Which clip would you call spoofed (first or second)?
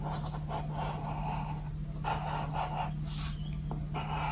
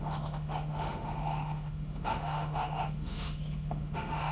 second